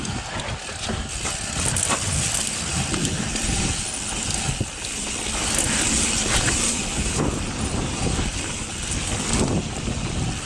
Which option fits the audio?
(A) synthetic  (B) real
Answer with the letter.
B